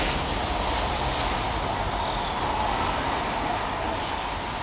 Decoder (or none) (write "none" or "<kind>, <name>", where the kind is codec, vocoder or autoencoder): none